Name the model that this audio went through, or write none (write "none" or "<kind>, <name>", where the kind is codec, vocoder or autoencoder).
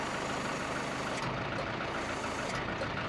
none